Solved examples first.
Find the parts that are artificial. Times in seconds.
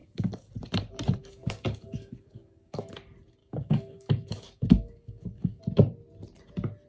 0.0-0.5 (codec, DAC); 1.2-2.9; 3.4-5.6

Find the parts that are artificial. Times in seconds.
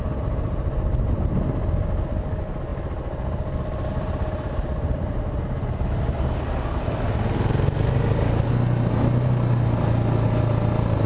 none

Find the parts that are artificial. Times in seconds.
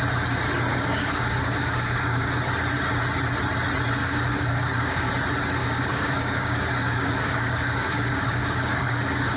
0.7-2.4 (codec, DAC); 4.0-5.1; 5.6-9.4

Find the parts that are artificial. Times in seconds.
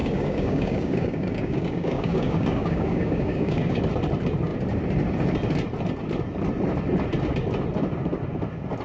0.0-3.8 (codec, DAC)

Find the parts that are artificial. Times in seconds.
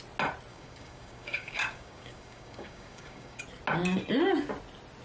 0.5-3.4 (codec, DAC)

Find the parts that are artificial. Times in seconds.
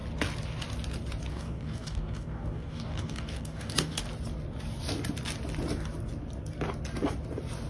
1.3-4.0 (codec, DAC)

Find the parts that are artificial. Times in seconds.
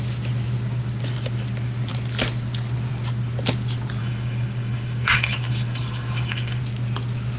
4.0-6.6 (codec, DAC)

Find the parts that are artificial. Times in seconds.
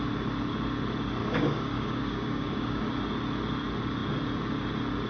1.2-2.8 (codec, DAC)